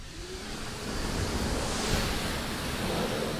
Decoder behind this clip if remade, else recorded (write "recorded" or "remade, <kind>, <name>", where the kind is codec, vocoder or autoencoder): remade, vocoder, BigVGAN v2